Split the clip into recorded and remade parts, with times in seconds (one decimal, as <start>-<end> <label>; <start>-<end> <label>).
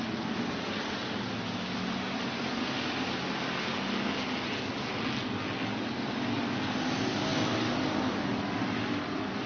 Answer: 0.0-9.5 recorded